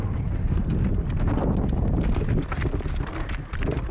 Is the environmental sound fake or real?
real